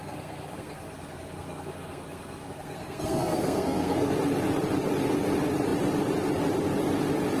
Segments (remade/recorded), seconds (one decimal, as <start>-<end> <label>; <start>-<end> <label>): 0.0-4.1 remade; 4.1-7.4 recorded